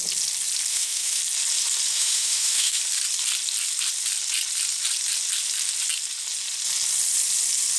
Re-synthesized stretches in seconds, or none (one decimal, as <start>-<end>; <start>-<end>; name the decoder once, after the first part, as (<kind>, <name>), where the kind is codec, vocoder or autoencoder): 0.7-1.2 (autoencoder, DAC-VAE); 1.9-2.8